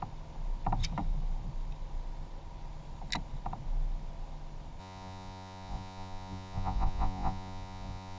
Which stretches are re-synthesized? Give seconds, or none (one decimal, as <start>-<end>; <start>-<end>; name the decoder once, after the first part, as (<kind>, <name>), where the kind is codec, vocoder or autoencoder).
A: 4.8-8.2 (vocoder, Vocos)